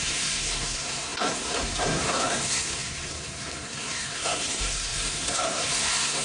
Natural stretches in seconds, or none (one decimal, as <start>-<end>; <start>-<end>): none